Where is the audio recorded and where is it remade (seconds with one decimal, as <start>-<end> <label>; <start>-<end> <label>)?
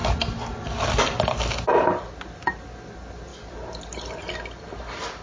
0.0-1.7 remade; 1.7-3.3 recorded; 3.3-4.2 remade; 4.2-5.2 recorded